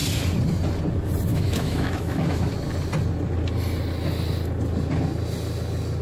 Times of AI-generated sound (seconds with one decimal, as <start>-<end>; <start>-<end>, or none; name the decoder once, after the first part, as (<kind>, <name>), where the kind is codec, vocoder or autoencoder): 1.3-2.5 (autoencoder, DAC-VAE)